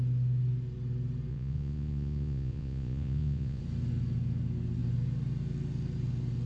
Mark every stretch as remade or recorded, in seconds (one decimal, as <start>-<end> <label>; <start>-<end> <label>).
0.0-1.3 recorded; 1.3-3.6 remade; 3.6-6.5 recorded